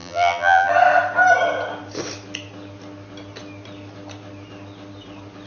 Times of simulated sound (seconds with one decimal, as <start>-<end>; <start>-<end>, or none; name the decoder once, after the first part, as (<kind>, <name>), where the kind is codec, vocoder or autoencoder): 0.0-0.7 (vocoder, BigVGAN v2)